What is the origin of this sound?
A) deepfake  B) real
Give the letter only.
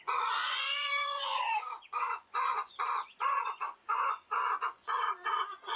A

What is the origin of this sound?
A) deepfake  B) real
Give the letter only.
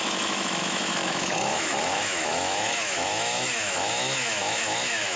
A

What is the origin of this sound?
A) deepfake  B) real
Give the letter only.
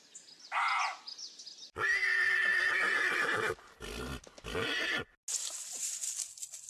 B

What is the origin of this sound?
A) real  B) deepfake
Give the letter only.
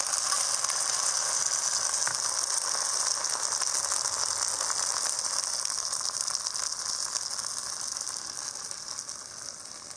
A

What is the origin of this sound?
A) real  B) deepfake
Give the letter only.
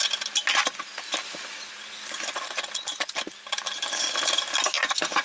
A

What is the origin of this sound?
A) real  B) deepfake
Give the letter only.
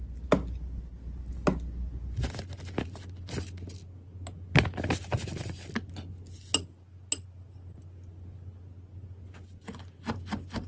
A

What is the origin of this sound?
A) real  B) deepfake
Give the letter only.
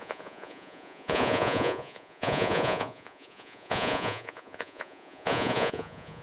B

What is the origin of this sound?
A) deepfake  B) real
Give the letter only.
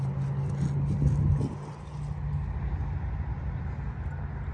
B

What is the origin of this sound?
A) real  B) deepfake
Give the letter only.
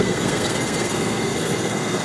B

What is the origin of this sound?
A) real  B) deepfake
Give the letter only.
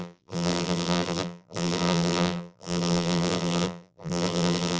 B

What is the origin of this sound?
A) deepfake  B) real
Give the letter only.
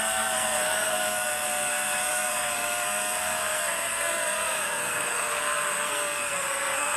A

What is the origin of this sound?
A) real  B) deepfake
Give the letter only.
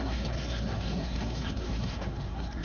B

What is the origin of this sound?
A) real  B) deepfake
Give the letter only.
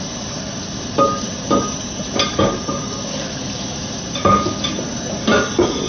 A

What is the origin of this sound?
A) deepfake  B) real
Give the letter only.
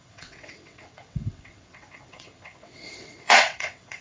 A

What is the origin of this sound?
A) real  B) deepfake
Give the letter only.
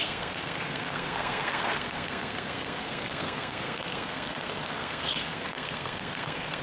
B